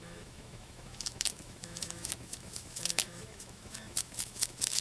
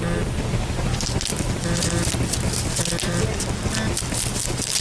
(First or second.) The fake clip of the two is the first